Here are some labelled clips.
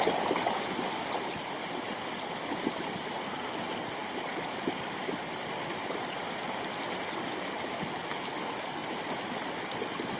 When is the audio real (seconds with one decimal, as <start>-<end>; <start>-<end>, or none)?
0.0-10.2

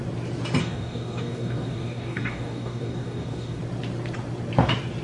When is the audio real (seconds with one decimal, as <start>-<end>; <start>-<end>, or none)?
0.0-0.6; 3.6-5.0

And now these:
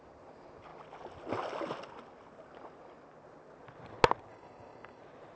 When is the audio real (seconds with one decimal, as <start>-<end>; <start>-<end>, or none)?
0.0-4.3; 5.0-5.4

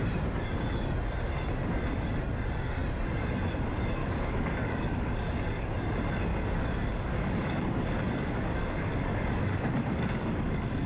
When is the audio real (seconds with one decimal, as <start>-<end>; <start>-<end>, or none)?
0.0-4.0; 5.7-6.3

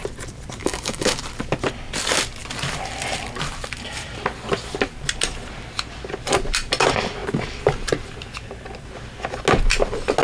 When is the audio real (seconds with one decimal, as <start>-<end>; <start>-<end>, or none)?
0.0-0.6; 1.2-10.2

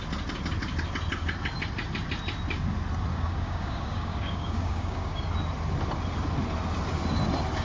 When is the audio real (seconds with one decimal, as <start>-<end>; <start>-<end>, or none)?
0.0-3.1; 5.3-7.6

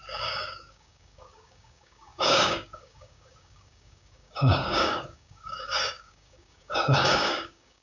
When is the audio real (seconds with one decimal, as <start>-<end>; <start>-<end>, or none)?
none

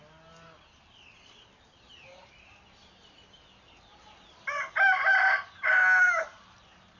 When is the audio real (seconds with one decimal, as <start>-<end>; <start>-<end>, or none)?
0.0-7.0